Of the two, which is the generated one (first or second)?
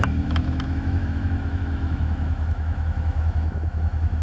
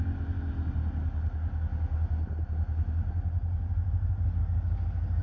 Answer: first